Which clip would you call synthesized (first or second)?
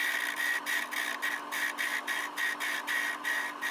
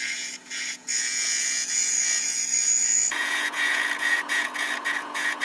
second